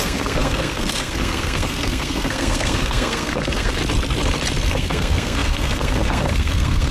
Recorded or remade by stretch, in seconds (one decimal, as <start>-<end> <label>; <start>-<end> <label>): 0.0-3.8 remade; 3.8-4.7 recorded; 4.7-6.9 remade